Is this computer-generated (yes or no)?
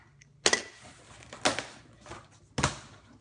no